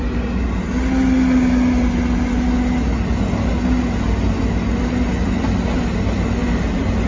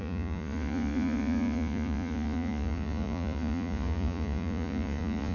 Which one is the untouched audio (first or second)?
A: first